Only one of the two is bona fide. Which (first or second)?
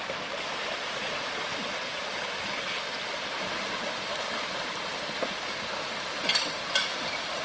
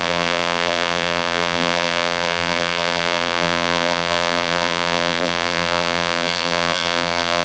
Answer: first